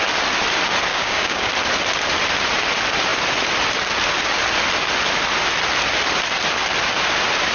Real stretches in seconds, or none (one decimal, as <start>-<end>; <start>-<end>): 0.0-0.9; 1.5-7.5